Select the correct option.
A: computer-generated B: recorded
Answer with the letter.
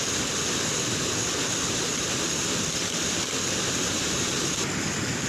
B